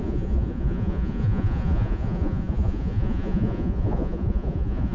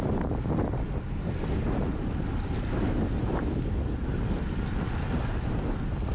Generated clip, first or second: first